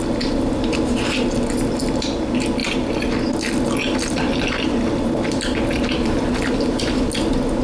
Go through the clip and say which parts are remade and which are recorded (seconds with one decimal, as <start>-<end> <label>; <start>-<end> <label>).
0.0-7.6 recorded